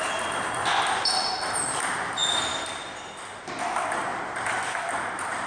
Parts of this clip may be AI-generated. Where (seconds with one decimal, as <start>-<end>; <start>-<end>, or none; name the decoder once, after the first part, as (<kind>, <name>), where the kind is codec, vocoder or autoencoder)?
none